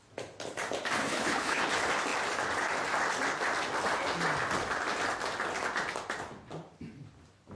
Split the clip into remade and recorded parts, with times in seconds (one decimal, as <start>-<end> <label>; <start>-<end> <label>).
0.0-1.0 recorded; 1.0-1.6 remade; 1.6-7.6 recorded